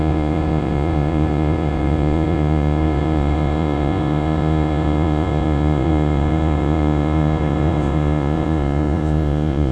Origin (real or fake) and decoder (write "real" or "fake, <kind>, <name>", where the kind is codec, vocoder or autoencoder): fake, vocoder, Vocos